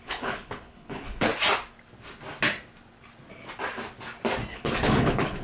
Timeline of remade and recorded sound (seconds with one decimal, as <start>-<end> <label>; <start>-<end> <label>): 0.0-1.3 remade; 1.3-4.5 recorded; 4.5-5.4 remade